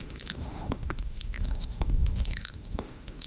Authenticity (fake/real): fake